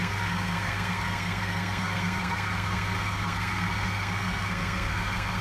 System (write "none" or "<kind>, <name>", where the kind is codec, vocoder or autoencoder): codec, SNAC